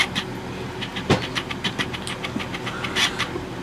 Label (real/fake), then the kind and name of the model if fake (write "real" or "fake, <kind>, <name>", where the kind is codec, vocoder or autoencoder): real